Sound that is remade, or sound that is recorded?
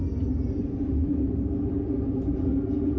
recorded